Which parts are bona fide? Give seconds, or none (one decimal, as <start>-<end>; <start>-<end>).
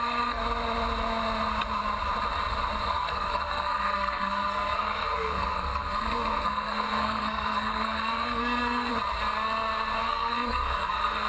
0.4-2.9; 8.9-10.0